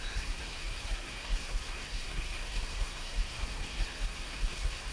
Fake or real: fake